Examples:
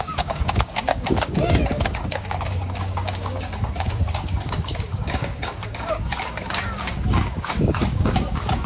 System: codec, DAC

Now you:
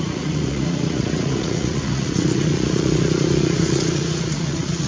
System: vocoder, Vocos